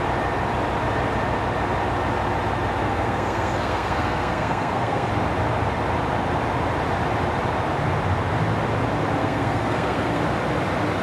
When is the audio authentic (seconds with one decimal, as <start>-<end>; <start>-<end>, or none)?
0.0-2.8; 5.1-9.2; 10.2-11.0